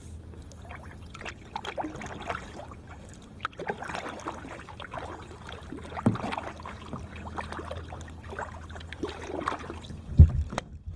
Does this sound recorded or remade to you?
recorded